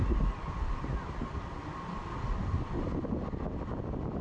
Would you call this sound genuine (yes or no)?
yes